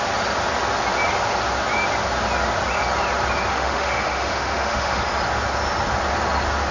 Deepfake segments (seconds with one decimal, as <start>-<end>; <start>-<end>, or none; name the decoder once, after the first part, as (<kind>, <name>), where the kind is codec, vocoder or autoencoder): 3.5-5.0 (autoencoder, DAC-VAE)